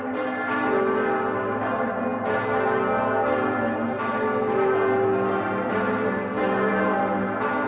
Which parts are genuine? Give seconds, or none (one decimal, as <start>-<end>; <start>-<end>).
0.0-7.7